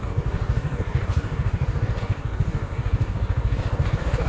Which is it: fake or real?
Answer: fake